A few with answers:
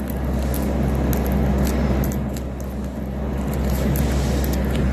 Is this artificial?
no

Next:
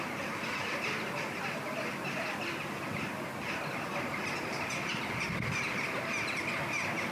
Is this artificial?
no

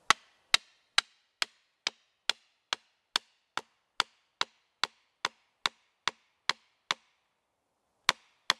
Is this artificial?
no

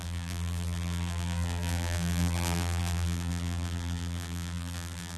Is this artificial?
yes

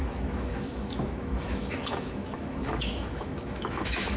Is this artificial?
yes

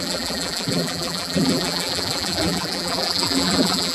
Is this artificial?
yes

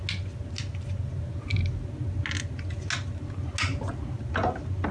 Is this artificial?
no